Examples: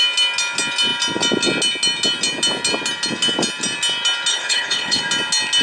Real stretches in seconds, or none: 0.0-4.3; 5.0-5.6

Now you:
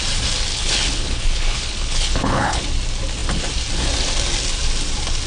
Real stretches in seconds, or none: 0.0-0.5; 2.6-5.3